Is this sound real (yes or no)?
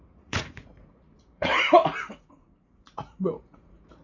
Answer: no